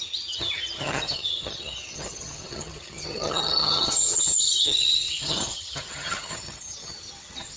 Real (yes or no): no